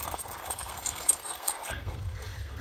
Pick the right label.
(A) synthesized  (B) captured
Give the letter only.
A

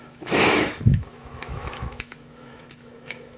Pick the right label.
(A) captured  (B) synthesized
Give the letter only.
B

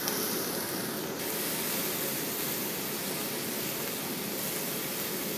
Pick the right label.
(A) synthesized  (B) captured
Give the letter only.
B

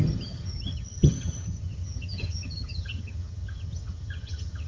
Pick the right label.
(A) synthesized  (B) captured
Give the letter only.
A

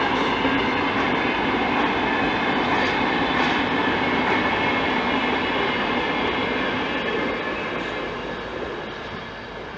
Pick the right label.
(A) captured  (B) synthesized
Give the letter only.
A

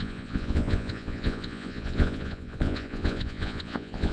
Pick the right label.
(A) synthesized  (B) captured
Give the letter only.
A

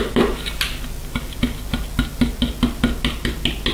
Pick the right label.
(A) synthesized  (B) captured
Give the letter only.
B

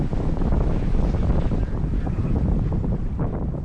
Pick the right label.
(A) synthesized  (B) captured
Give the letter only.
A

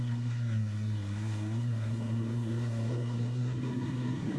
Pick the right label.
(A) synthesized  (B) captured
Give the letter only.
A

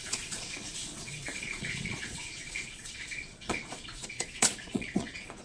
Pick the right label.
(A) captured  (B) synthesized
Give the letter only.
B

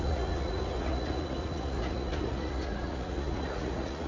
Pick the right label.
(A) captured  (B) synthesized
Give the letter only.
B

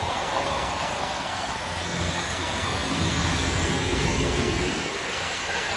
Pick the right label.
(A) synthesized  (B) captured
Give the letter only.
A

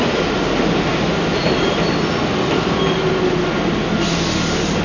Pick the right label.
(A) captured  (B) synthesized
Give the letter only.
A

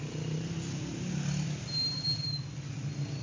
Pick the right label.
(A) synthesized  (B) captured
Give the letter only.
B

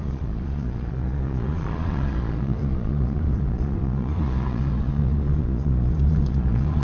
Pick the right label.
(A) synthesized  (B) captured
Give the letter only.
A